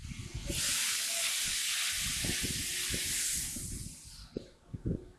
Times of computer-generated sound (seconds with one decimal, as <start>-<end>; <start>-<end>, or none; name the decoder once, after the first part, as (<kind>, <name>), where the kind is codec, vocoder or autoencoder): 0.9-1.7 (codec, DAC); 4.2-5.2